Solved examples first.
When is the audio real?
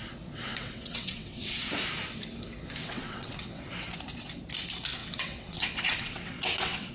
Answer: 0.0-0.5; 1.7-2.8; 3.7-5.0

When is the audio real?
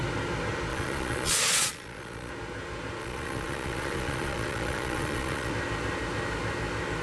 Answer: 0.0-0.7; 2.3-3.0; 5.5-7.0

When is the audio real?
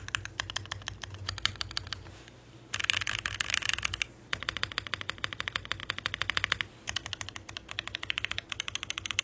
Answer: 0.0-9.2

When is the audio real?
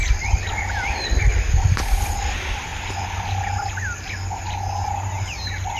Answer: 0.0-5.8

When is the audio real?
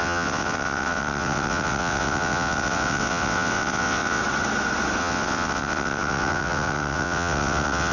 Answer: 4.2-5.0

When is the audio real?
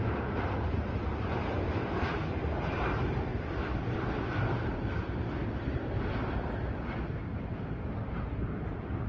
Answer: 2.1-3.0